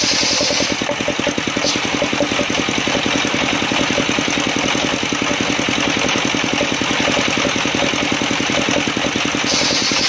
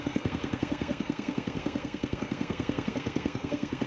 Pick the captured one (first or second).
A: first